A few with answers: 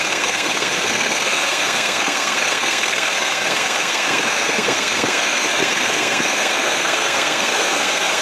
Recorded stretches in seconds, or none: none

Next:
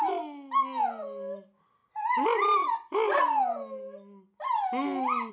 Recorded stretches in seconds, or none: 0.0-5.3

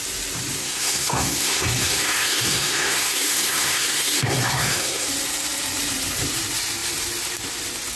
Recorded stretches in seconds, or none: 0.0-0.6; 5.1-8.0

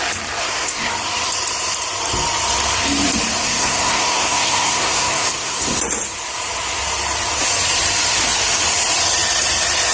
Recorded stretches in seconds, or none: 0.0-0.4; 0.9-3.4; 5.8-9.9

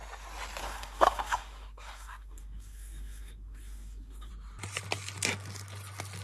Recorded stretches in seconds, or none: 0.0-0.6; 4.3-6.2

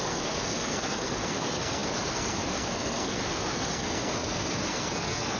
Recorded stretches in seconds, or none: none

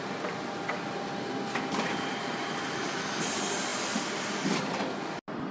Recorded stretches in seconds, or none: 0.0-5.5

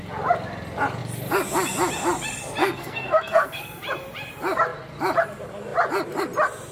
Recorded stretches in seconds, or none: 0.0-2.6; 3.8-6.7